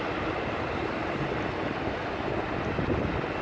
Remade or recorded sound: recorded